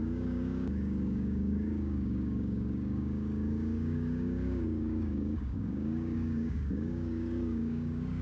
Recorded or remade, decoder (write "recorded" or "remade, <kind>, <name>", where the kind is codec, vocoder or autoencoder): remade, codec, DAC